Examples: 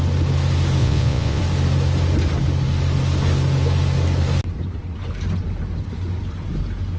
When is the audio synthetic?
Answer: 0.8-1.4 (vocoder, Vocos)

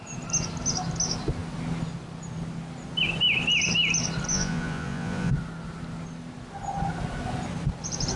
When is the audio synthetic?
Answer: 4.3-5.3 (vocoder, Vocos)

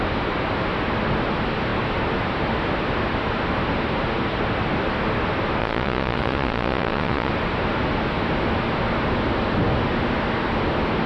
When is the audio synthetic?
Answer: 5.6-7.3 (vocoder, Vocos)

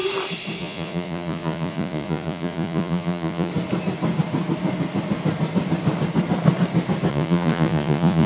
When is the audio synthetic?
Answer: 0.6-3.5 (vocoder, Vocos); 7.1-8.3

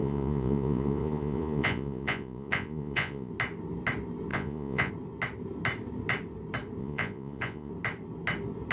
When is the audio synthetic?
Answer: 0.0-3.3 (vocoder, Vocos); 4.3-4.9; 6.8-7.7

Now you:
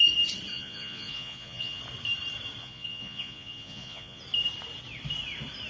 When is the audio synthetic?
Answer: 0.5-1.8 (vocoder, Vocos); 2.6-4.2

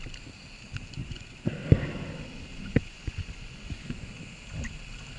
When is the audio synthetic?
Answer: 1.0-1.5 (vocoder, Vocos); 2.5-4.1

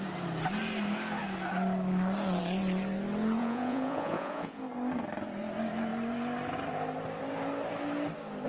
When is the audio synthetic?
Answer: 3.4-4.6 (vocoder, Vocos)